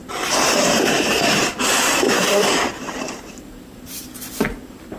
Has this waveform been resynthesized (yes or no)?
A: yes